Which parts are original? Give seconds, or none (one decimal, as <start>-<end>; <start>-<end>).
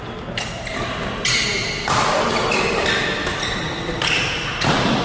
0.0-5.0